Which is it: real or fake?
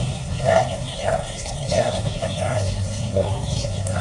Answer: fake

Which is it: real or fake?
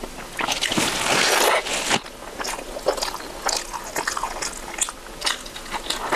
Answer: real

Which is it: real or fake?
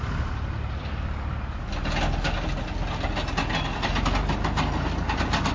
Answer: real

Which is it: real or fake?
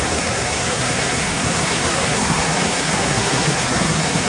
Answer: fake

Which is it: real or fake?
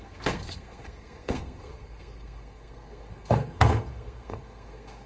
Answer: fake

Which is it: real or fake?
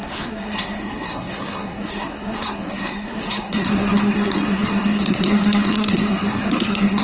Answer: fake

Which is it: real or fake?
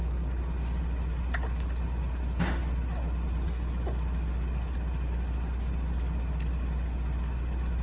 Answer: real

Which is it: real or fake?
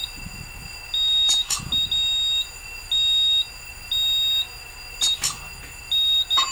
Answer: real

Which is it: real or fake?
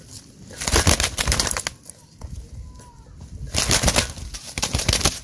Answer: real